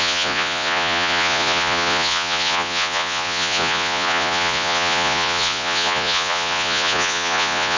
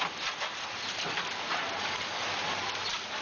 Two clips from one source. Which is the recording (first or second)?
second